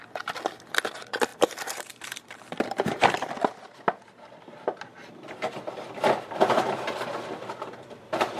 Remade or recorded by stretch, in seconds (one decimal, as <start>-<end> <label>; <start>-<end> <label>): 0.0-1.3 recorded; 1.3-6.3 remade; 6.3-8.4 recorded